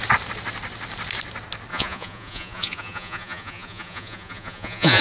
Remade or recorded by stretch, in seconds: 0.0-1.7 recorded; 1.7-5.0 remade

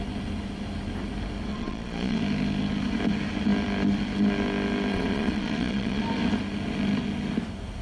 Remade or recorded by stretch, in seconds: 0.0-1.5 recorded; 1.5-2.2 remade; 2.2-4.9 recorded; 4.9-6.0 remade; 6.0-7.8 recorded

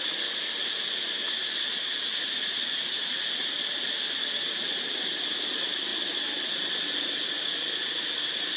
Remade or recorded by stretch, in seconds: 0.0-8.6 recorded

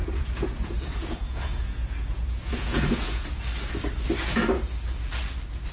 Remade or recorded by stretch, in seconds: 0.0-3.4 remade; 3.4-5.7 recorded

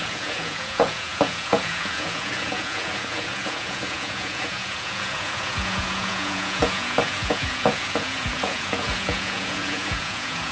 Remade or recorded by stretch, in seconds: 0.0-10.5 remade